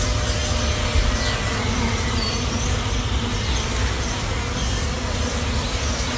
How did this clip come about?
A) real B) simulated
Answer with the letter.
A